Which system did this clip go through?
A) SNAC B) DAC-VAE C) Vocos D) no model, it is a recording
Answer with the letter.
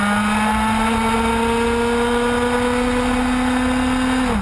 D